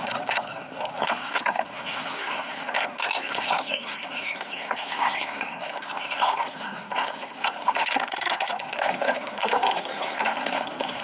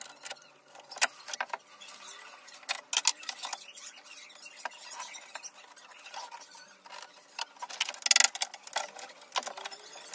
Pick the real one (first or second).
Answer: second